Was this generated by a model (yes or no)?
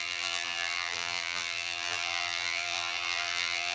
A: yes